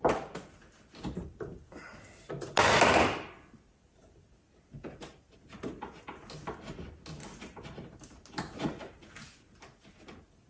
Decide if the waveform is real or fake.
real